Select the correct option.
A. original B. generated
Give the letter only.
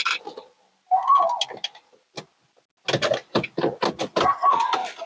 A